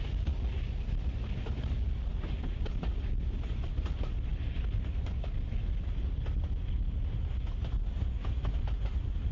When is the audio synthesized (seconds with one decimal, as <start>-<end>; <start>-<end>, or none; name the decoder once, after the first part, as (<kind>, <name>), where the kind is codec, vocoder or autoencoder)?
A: none

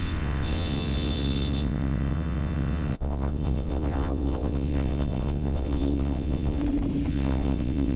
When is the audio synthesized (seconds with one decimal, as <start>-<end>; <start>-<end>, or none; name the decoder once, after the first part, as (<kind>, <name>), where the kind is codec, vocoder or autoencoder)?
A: 0.0-6.6 (vocoder, WaveNeXt); 7.1-8.0

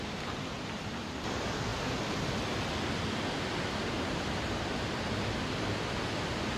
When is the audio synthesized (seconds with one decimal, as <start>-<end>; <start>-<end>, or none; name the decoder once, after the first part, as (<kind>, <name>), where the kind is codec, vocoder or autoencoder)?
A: none